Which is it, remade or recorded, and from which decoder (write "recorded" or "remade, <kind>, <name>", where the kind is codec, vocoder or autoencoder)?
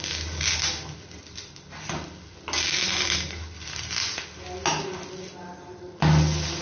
recorded